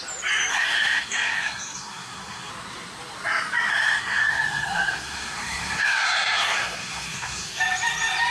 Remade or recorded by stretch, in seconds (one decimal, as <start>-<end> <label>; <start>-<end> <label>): 0.0-0.5 recorded; 0.5-2.5 remade; 2.5-3.7 recorded; 3.7-7.6 remade; 7.6-8.3 recorded